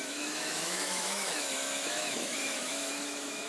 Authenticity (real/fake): fake